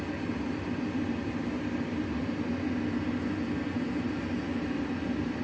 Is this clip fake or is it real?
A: real